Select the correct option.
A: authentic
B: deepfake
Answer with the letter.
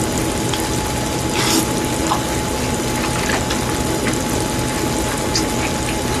A